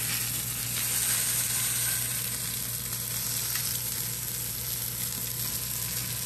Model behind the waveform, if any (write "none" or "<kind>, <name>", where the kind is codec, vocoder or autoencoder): none